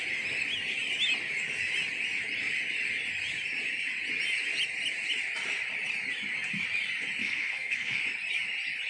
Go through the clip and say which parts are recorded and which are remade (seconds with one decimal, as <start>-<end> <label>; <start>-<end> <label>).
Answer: 0.0-7.2 recorded; 7.2-8.0 remade; 8.0-8.9 recorded